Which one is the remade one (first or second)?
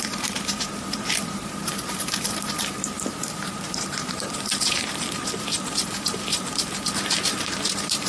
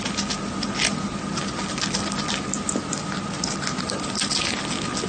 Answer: first